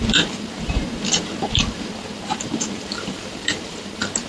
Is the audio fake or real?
fake